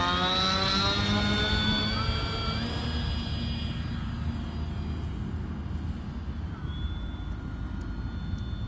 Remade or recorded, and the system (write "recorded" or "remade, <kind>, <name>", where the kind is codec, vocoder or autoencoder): recorded